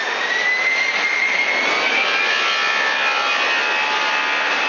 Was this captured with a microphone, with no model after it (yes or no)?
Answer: yes